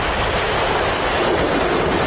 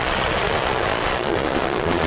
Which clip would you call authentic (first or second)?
first